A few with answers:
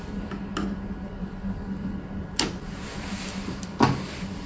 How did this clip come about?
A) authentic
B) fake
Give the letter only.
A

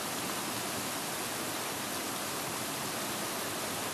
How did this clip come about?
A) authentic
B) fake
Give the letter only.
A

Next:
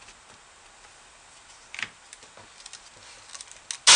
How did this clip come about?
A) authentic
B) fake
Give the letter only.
A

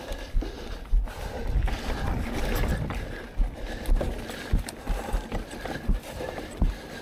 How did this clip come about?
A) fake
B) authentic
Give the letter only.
B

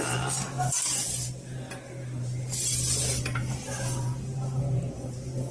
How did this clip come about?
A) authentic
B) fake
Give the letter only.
A